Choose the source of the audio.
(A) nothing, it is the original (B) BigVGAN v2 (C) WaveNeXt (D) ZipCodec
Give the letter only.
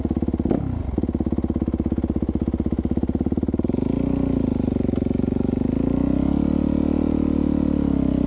A